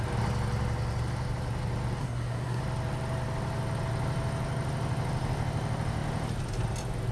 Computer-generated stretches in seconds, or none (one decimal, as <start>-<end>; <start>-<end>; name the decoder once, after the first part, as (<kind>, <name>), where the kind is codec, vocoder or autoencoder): 2.0-2.6 (codec, SNAC)